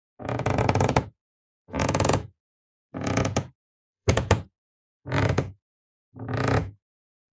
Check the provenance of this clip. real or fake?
fake